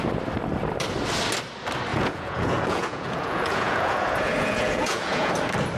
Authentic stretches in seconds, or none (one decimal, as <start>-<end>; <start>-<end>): 0.0-1.9; 5.3-5.8